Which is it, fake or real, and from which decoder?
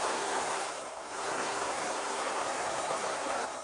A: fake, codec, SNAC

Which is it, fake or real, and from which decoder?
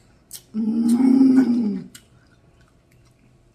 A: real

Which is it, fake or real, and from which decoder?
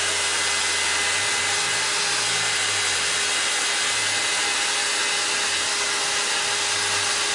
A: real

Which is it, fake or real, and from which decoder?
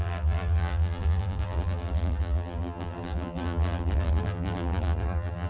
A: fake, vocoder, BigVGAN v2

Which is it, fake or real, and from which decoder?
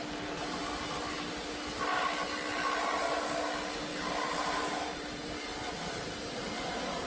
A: real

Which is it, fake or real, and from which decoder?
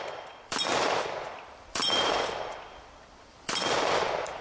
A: fake, vocoder, BigVGAN v2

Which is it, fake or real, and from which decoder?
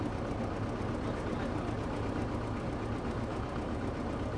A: real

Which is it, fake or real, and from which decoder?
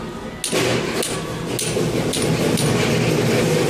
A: real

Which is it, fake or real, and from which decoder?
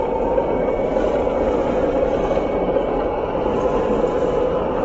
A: real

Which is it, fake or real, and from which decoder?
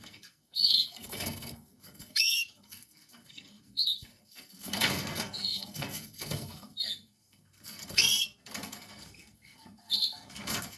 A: fake, codec, SNAC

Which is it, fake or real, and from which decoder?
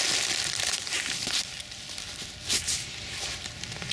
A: real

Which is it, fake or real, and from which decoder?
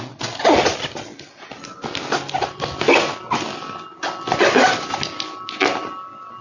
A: real